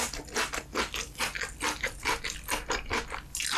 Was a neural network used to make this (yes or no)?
no